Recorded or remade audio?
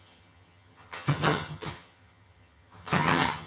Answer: remade